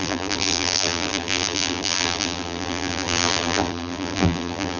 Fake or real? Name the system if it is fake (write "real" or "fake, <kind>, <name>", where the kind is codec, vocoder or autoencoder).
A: fake, vocoder, BigVGAN v2